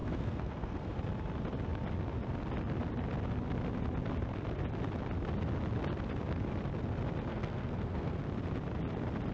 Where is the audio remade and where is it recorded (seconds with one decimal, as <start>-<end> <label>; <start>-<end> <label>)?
0.0-1.0 remade; 1.0-7.3 recorded; 7.3-8.2 remade; 8.2-9.3 recorded